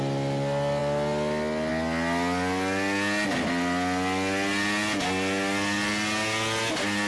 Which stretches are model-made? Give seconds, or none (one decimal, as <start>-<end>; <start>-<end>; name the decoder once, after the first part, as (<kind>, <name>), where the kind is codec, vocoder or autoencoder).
none

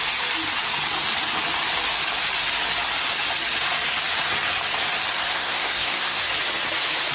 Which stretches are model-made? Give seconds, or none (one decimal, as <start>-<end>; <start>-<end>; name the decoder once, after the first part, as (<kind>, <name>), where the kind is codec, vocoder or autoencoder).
5.3-6.2 (codec, SNAC)